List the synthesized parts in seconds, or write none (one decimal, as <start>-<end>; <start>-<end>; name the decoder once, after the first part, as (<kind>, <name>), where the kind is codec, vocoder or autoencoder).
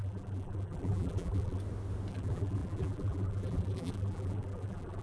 0.0-1.6 (vocoder, BigVGAN v2); 2.1-5.0